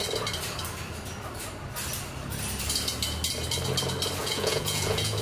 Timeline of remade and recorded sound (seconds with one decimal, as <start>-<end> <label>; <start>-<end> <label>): 0.0-4.2 recorded; 4.2-5.2 remade